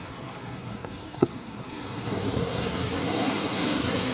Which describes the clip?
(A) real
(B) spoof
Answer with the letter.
B